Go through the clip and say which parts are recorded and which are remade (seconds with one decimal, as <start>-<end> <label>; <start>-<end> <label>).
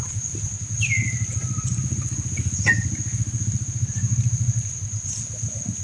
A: 0.0-5.8 recorded